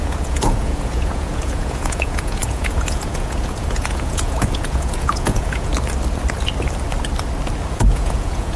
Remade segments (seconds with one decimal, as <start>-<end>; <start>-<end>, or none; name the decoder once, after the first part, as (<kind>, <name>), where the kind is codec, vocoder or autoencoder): 0.0-5.7 (vocoder, Vocos); 7.7-8.6